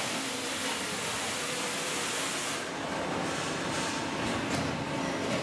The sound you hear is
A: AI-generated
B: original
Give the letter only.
B